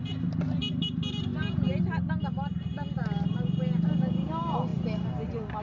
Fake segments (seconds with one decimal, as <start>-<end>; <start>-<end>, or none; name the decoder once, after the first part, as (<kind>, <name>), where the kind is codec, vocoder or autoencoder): none

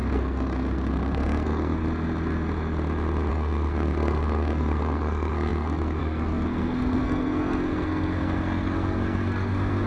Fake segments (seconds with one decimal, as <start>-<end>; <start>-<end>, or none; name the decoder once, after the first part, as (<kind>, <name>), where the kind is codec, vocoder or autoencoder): 0.0-1.8 (codec, SNAC); 3.3-9.9

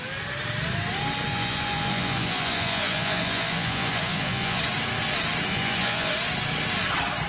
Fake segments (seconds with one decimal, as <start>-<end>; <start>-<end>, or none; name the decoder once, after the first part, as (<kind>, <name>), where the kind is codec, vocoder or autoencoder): 1.3-4.6 (vocoder, Vocos); 5.5-6.1

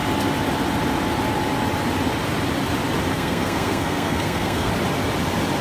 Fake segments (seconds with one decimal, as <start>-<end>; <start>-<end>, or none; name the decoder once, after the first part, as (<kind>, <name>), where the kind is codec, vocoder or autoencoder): 3.1-4.7 (codec, SNAC)

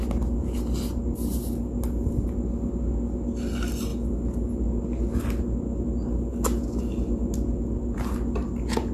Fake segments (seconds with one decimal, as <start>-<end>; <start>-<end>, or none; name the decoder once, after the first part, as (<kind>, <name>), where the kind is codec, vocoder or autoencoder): none

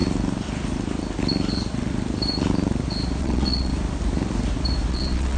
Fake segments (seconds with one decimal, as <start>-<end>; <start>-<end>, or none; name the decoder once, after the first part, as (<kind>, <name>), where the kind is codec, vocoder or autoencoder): 3.2-3.7 (vocoder, Vocos); 4.9-5.4

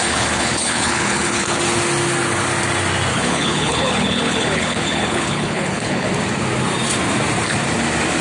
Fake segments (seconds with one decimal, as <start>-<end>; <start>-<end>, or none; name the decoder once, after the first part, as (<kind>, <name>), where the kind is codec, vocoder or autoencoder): 0.0-1.6 (codec, HILCodec); 3.1-6.1